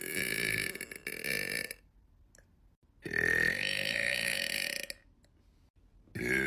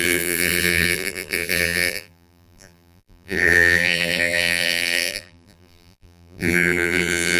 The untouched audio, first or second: first